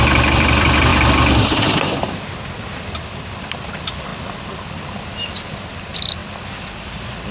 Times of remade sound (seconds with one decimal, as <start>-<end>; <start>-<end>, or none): 0.0-6.2; 6.7-7.3